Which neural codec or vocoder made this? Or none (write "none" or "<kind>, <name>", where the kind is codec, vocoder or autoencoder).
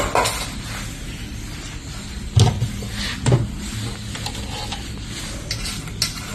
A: none